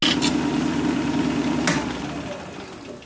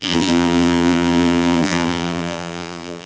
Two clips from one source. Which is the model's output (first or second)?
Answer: second